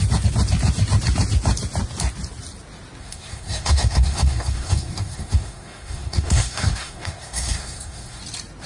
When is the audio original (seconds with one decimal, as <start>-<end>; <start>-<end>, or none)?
0.0-3.0; 8.2-8.7